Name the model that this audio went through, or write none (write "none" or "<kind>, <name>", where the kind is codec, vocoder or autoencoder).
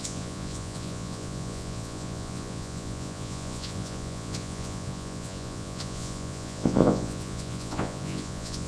vocoder, Vocos